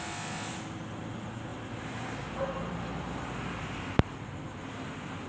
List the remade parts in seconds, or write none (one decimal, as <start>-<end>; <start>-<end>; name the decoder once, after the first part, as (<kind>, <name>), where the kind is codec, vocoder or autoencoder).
1.5-2.1 (vocoder, BigVGAN v2)